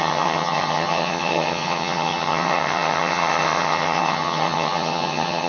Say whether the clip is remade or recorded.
remade